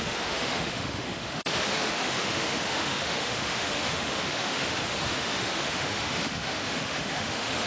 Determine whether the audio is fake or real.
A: fake